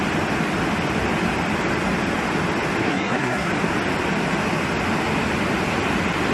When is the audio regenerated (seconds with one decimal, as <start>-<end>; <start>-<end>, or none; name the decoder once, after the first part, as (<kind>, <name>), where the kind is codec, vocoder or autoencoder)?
2.8-3.5 (codec, SNAC)